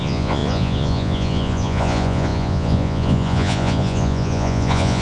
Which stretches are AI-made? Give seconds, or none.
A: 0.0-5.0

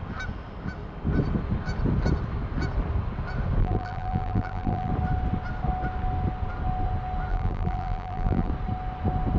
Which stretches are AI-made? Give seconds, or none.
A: 3.6-4.9; 7.3-8.5

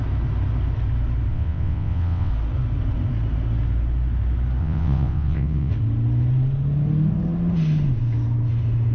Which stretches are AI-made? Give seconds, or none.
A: 1.3-2.3; 4.6-5.7